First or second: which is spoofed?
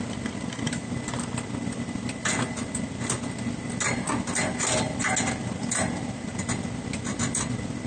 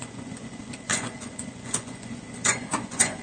second